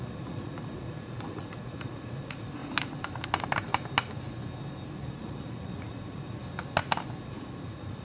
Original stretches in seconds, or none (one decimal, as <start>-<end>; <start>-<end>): 2.6-4.9; 6.4-7.2